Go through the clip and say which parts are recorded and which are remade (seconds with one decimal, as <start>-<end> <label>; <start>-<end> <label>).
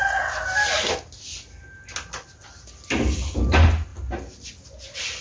0.0-5.2 recorded